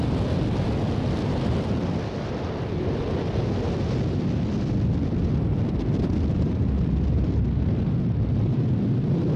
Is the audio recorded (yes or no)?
yes